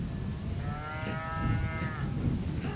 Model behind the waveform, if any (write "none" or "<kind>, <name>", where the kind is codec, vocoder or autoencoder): none